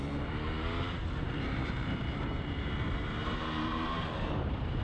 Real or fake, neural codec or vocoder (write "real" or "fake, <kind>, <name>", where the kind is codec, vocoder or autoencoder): fake, vocoder, BigVGAN v2